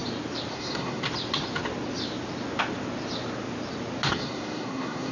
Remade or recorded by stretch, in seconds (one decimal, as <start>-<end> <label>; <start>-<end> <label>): 0.0-0.5 recorded; 0.5-1.0 remade; 1.0-4.1 recorded; 4.1-5.1 remade